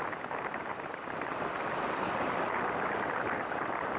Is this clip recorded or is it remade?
recorded